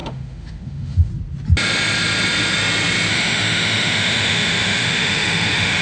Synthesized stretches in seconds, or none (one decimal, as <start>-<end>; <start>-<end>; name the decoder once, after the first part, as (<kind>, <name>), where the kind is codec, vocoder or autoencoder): 0.0-1.1 (autoencoder, DAC-VAE); 3.1-5.8